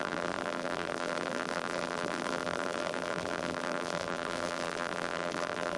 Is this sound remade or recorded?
remade